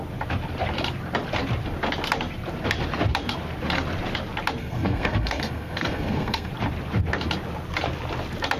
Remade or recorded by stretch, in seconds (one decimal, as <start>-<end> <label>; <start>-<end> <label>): 0.0-4.6 recorded; 4.6-6.5 remade; 6.5-8.6 recorded